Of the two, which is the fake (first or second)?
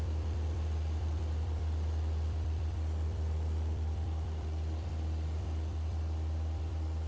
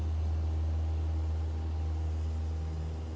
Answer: first